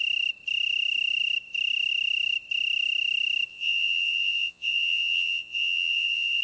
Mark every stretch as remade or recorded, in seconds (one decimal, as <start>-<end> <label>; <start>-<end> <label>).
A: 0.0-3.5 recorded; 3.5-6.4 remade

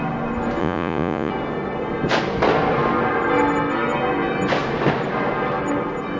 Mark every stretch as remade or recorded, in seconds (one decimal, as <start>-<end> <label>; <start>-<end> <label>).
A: 0.0-0.6 recorded; 0.6-1.3 remade; 1.3-6.2 recorded

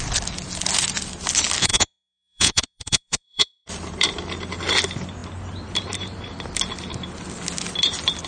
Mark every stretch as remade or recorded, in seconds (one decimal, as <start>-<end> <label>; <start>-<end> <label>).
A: 0.0-1.6 recorded; 1.6-3.7 remade; 3.7-8.3 recorded

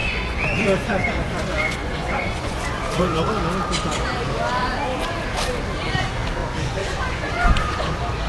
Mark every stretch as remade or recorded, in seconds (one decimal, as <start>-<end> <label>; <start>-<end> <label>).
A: 0.0-3.3 remade; 3.3-6.4 recorded; 6.4-7.9 remade; 7.9-8.3 recorded

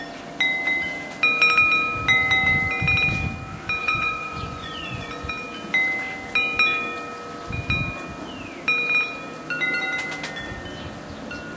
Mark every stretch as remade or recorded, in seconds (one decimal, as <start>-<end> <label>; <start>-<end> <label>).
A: 0.0-3.8 recorded; 3.8-5.3 remade; 5.3-11.6 recorded

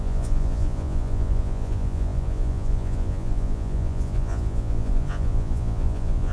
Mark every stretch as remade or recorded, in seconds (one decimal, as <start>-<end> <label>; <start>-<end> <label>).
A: 0.0-6.3 remade

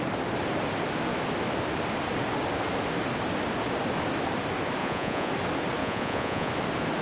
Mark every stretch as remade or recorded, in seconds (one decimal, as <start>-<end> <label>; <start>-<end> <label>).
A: 0.0-4.8 recorded; 4.8-5.3 remade; 5.3-5.8 recorded; 5.8-6.5 remade; 6.5-7.0 recorded

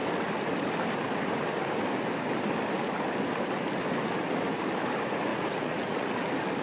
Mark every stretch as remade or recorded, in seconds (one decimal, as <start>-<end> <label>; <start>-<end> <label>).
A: 0.0-5.3 recorded; 5.3-6.1 remade; 6.1-6.6 recorded